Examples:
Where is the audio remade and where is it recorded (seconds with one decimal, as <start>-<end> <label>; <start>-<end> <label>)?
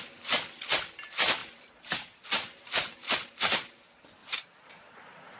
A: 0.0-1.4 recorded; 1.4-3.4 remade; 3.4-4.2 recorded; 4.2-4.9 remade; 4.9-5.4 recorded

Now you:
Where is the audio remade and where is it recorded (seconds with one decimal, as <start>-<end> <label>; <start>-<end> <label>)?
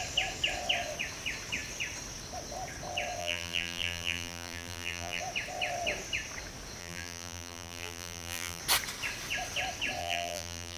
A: 0.0-3.2 recorded; 3.2-5.2 remade; 5.2-6.8 recorded; 6.8-8.6 remade; 8.6-10.0 recorded; 10.0-10.8 remade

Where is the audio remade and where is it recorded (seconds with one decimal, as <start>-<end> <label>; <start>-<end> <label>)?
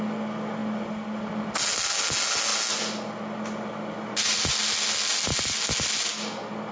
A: 0.0-6.7 recorded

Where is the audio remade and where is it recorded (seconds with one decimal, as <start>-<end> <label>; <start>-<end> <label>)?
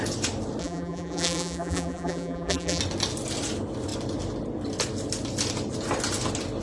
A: 0.0-0.6 recorded; 0.6-2.8 remade; 2.8-6.6 recorded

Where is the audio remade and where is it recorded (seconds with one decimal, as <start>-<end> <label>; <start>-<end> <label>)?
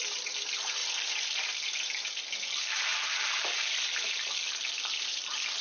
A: 0.0-2.9 recorded; 2.9-5.6 remade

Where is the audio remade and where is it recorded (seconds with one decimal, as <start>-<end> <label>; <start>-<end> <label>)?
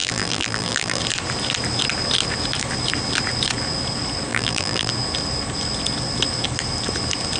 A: 0.0-1.0 remade; 1.0-4.3 recorded; 4.3-4.9 remade; 4.9-7.4 recorded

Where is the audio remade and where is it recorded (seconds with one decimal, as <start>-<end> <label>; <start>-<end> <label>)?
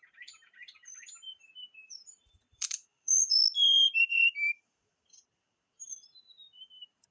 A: 0.0-3.4 remade; 3.4-4.0 recorded; 4.0-7.1 remade